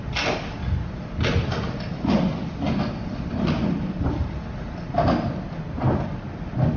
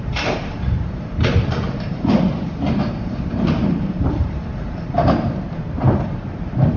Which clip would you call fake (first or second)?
second